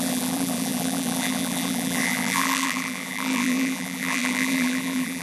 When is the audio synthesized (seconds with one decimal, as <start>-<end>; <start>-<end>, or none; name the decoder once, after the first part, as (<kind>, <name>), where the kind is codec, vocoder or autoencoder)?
0.0-5.2 (vocoder, BigVGAN v2)